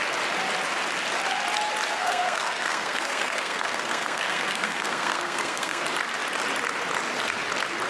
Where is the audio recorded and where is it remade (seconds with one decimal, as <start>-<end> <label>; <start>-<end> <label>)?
0.0-1.9 recorded; 1.9-5.8 remade; 5.8-7.9 recorded